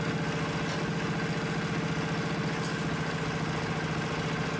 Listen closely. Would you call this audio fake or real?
real